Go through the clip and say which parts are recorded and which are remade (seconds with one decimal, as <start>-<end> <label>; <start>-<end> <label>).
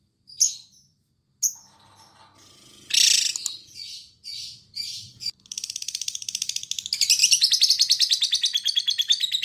0.0-5.1 recorded; 5.1-6.3 remade; 6.3-7.2 recorded; 7.2-7.7 remade; 7.7-9.4 recorded